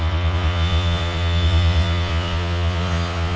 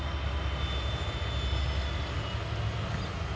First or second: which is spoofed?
first